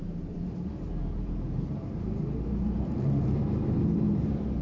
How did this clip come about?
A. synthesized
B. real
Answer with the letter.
A